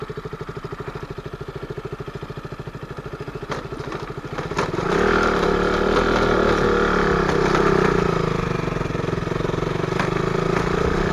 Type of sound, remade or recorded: recorded